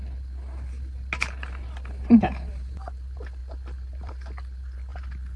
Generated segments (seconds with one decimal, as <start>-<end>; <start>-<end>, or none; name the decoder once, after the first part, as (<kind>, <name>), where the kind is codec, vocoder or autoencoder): none